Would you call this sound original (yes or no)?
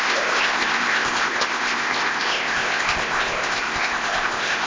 no